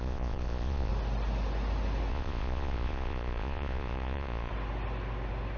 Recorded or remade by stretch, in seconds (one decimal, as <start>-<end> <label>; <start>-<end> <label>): 0.0-0.9 remade; 0.9-2.1 recorded; 2.1-4.5 remade; 4.5-5.6 recorded